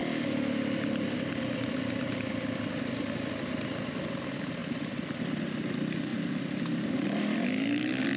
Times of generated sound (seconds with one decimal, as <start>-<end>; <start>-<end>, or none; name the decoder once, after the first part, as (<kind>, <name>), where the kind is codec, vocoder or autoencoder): 0.0-3.5 (vocoder, BigVGAN v2); 4.6-5.4; 6.1-6.6